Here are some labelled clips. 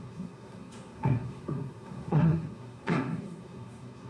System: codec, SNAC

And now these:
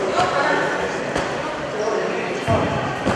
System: none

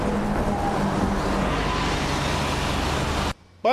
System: none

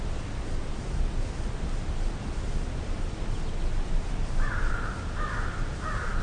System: none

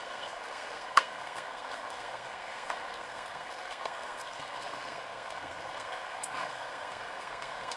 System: codec, SNAC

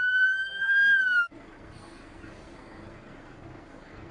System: codec, SNAC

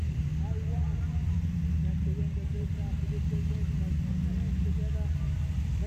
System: none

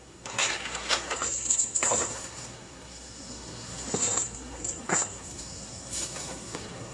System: codec, SNAC